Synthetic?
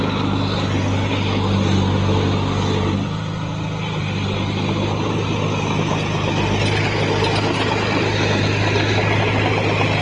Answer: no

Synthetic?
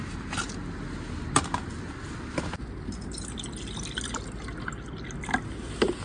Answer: no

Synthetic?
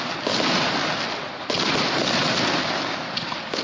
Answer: no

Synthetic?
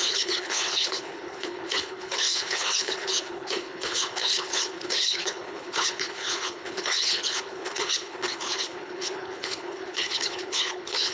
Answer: yes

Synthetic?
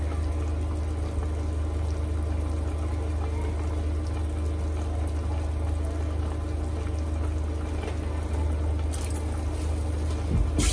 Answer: no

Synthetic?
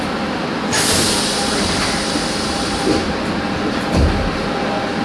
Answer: no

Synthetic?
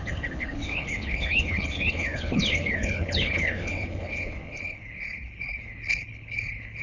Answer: yes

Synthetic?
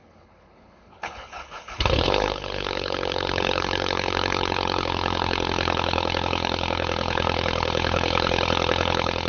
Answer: yes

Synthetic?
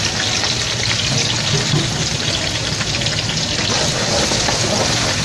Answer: no